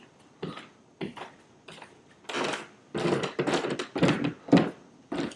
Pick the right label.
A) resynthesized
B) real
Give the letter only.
B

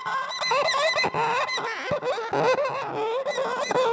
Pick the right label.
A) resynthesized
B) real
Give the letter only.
B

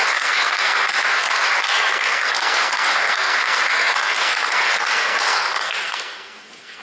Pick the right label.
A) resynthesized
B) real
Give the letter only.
A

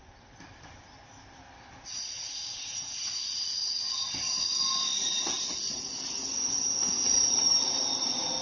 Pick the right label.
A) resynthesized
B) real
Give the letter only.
B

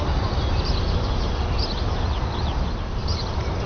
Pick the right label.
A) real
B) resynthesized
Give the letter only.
A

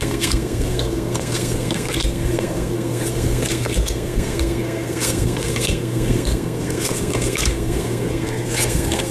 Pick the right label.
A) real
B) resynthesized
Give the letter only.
B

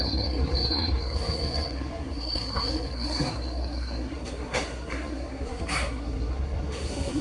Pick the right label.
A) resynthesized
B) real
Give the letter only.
A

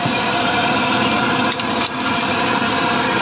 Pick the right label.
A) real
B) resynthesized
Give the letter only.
A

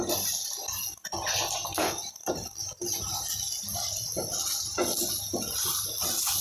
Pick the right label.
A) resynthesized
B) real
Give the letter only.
B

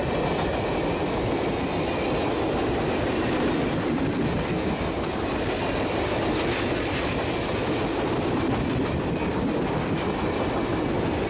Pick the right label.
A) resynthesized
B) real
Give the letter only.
B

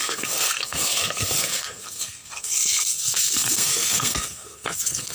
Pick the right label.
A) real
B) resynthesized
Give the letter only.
B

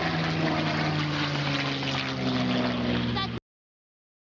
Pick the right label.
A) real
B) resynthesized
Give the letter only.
A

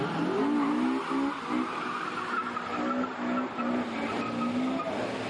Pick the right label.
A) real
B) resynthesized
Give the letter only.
A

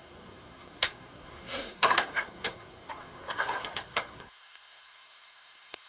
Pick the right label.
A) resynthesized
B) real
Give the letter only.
A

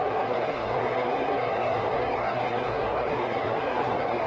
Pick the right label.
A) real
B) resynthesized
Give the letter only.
B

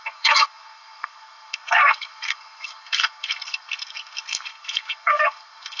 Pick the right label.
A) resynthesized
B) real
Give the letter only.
A